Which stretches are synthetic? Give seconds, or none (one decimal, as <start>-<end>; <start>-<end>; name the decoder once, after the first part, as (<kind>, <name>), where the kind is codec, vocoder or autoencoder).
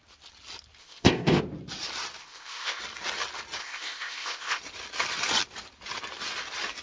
0.8-1.4 (codec, ZipCodec); 2.2-2.8; 3.6-4.6